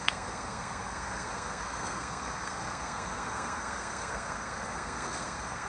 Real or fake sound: fake